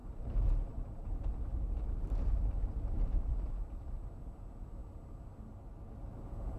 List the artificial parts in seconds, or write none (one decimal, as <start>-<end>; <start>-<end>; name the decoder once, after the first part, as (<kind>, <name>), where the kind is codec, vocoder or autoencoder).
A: 0.0-3.3 (vocoder, BigVGAN v2)